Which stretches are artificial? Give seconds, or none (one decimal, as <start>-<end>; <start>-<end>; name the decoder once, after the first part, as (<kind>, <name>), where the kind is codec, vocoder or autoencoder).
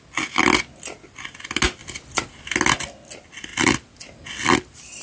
none